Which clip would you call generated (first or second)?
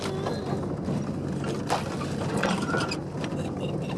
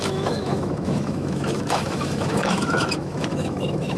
second